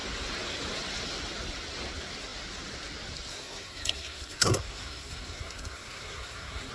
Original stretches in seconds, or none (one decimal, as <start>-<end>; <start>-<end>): 0.0-3.3